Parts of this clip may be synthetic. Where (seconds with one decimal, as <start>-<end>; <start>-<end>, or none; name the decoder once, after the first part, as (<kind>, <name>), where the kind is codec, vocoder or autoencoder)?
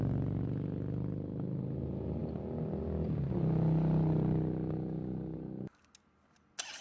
none